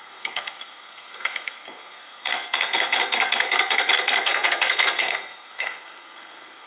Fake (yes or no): yes